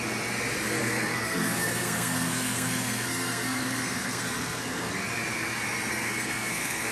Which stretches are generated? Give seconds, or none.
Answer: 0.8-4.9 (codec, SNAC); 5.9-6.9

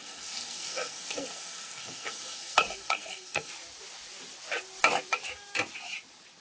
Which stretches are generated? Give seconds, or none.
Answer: 0.0-3.5 (codec, SNAC)

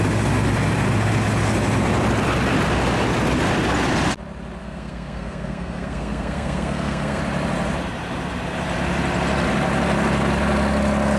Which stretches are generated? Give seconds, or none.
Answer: 4.6-7.2 (codec, SNAC)

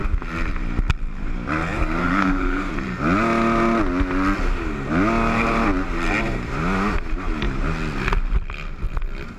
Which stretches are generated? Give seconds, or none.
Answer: 2.0-2.7 (codec, SNAC)

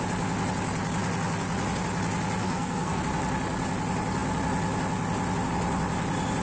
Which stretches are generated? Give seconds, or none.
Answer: 2.4-3.0 (codec, SNAC)

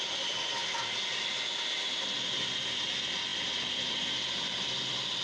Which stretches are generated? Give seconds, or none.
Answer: none